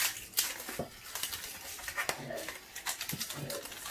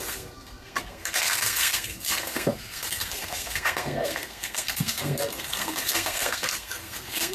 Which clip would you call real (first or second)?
first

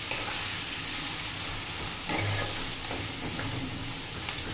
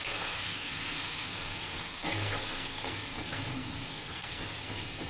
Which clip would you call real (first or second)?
first